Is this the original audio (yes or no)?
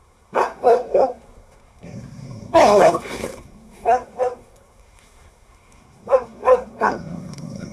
no